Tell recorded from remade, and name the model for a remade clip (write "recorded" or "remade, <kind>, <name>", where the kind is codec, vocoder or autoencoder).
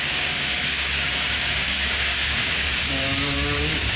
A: remade, codec, DAC